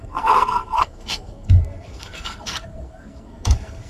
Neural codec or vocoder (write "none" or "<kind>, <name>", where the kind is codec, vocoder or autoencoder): codec, SNAC